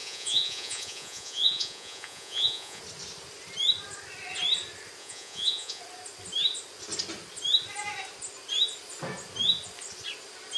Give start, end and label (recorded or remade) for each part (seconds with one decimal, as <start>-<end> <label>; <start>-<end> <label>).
0.0-2.8 remade; 2.8-5.0 recorded; 5.0-5.8 remade; 5.8-10.6 recorded